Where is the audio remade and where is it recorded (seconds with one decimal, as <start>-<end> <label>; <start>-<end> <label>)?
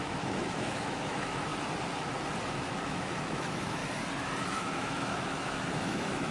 0.0-1.5 remade; 1.5-2.5 recorded; 2.5-3.8 remade; 3.8-4.4 recorded; 4.4-6.3 remade